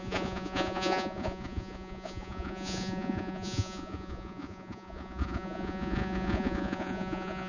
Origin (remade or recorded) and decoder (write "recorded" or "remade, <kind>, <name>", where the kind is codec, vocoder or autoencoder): remade, vocoder, Vocos